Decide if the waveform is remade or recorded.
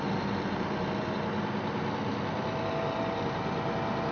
recorded